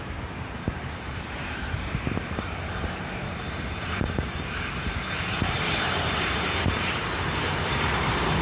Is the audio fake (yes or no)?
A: yes